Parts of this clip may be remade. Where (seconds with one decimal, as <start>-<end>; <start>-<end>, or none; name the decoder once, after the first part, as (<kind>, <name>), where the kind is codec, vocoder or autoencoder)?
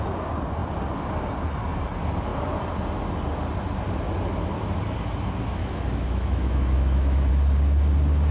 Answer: 5.6-7.3 (autoencoder, DAC-VAE)